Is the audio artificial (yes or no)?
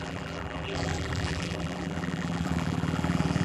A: yes